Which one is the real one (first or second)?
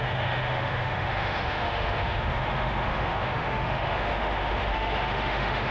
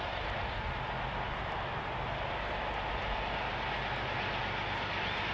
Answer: second